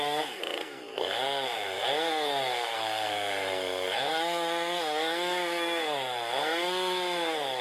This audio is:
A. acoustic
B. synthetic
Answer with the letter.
B